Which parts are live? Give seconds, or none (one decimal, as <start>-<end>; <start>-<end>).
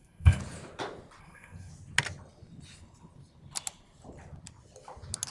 0.4-1.2; 1.7-5.3